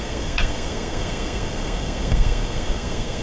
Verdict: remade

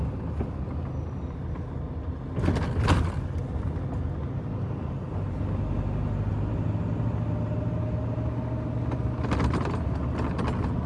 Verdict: recorded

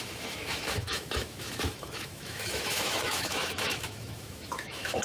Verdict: remade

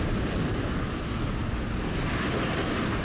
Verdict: recorded